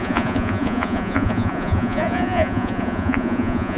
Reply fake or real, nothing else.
fake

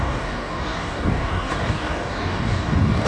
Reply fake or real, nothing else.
fake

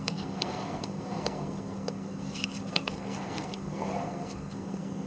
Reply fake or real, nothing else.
fake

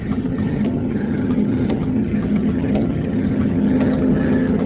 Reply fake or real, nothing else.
fake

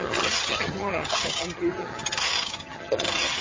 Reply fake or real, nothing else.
fake